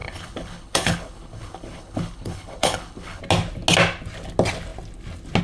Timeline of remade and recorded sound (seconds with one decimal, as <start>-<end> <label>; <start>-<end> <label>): 0.0-3.2 remade; 3.2-5.4 recorded